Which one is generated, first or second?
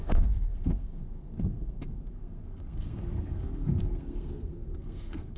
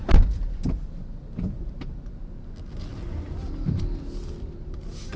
first